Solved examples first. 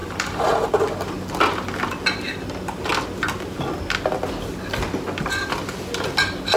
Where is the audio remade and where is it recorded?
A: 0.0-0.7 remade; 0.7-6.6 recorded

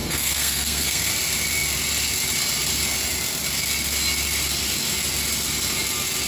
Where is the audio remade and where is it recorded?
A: 0.0-1.1 remade; 1.1-6.3 recorded

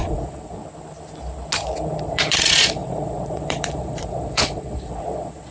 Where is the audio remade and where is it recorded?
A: 0.0-0.6 remade; 0.6-2.0 recorded; 2.0-5.5 remade